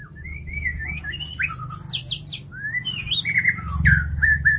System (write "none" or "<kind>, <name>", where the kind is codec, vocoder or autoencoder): none